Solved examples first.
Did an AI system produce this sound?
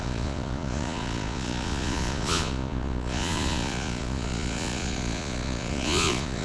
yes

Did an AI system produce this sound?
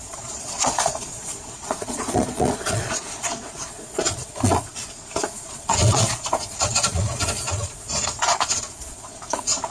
yes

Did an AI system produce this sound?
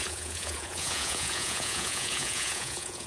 yes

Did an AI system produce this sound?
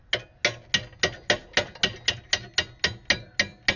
no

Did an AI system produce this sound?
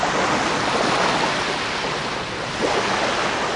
no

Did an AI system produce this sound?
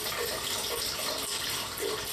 no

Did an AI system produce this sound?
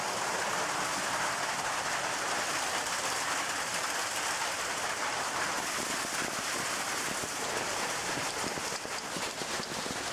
no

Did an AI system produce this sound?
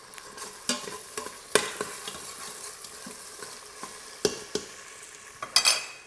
no